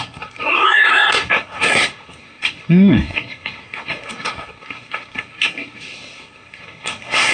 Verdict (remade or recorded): remade